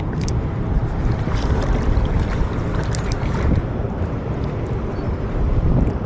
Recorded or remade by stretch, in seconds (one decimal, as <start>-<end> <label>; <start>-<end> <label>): 0.0-0.8 recorded; 0.8-1.8 remade; 1.8-3.8 recorded; 3.8-4.9 remade; 4.9-6.1 recorded